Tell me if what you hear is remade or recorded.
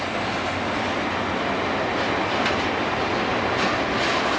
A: recorded